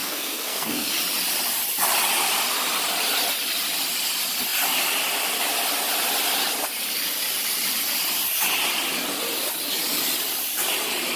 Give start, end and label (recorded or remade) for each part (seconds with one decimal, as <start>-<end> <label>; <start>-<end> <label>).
0.0-0.9 remade; 0.9-11.2 recorded